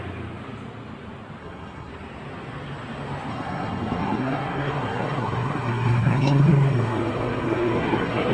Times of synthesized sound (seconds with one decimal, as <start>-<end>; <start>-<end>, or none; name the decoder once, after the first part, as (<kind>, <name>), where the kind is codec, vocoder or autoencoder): 1.4-1.9 (codec, SNAC); 3.3-8.3